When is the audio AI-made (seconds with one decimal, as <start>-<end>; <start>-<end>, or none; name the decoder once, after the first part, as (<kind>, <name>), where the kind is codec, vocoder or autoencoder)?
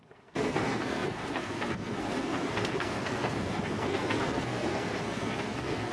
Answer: 0.0-5.9 (codec, SNAC)